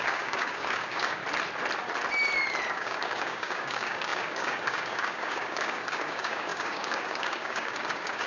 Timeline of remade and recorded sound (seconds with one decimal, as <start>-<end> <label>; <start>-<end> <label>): 0.0-1.2 remade; 1.2-2.7 recorded; 2.7-8.3 remade